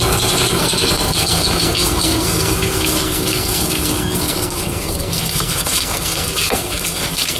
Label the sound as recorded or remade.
remade